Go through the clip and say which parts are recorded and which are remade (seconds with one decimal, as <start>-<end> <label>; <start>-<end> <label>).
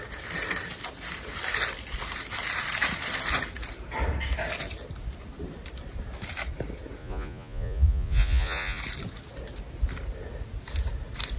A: 0.0-7.0 recorded; 7.0-8.8 remade; 8.8-11.4 recorded